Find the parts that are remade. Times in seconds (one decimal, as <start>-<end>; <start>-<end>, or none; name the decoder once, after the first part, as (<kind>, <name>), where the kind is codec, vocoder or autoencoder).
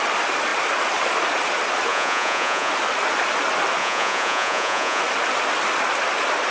1.9-2.7 (vocoder, Vocos); 3.8-5.0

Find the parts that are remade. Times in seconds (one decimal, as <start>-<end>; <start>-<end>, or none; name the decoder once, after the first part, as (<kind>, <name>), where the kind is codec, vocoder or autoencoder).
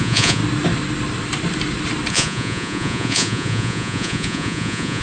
0.0-0.4 (vocoder, Vocos); 2.1-5.0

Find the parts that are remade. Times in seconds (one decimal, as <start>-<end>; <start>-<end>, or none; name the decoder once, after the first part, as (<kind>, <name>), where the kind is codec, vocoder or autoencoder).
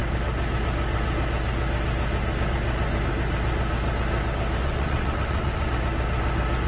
4.6-5.7 (vocoder, WaveNeXt)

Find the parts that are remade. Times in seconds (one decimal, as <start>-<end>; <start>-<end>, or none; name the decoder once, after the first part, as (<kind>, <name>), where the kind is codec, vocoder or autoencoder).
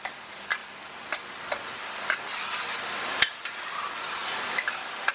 none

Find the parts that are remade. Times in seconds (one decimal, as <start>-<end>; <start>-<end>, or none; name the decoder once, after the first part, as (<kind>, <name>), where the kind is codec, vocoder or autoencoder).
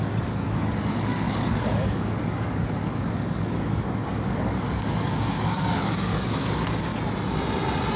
0.0-6.9 (codec, DAC)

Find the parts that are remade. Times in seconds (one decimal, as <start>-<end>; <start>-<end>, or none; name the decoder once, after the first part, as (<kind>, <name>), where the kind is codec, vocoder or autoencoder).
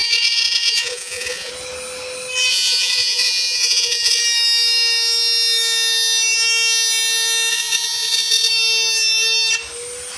0.0-1.5 (vocoder, Vocos); 2.5-4.2; 7.5-8.5